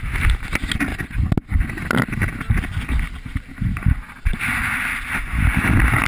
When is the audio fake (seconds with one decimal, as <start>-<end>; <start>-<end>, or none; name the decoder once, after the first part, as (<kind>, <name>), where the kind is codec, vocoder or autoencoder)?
none